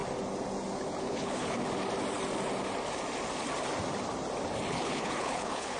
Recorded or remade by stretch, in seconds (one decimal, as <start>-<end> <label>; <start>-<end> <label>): 0.0-1.0 recorded; 1.0-1.6 remade; 1.6-4.7 recorded; 4.7-5.8 remade

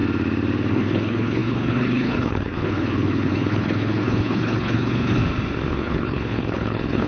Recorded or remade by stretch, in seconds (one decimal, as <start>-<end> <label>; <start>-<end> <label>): 0.0-0.7 recorded; 0.7-5.2 remade; 5.2-5.7 recorded; 5.7-7.1 remade